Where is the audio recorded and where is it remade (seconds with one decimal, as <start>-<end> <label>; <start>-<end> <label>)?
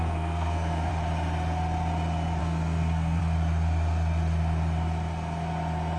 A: 0.0-0.9 remade; 0.9-2.4 recorded; 2.4-3.2 remade; 3.2-6.0 recorded